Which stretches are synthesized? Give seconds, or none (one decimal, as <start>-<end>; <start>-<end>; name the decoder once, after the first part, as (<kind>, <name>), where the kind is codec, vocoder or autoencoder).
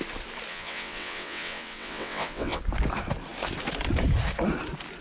0.5-2.6 (vocoder, WaveNeXt)